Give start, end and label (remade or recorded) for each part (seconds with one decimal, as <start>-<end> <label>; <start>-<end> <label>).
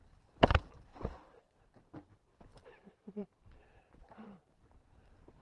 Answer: 0.0-2.5 recorded; 2.5-3.6 remade; 3.6-5.4 recorded